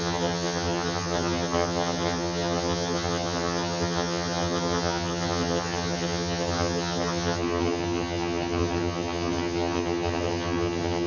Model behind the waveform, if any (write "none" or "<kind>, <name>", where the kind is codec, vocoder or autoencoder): vocoder, HiFi-GAN